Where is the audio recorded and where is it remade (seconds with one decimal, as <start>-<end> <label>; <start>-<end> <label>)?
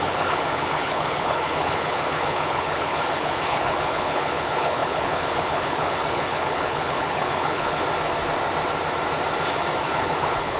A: 0.0-7.8 remade; 7.8-9.8 recorded; 9.8-10.6 remade